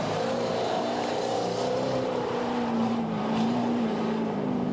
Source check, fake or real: fake